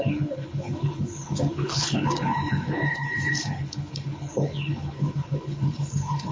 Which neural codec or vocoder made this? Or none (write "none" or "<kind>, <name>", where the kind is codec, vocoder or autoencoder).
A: codec, HILCodec